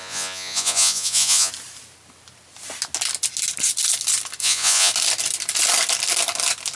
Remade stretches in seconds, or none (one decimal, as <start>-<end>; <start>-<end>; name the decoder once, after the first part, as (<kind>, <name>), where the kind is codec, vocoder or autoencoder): 0.0-1.5 (vocoder, Vocos); 4.4-4.9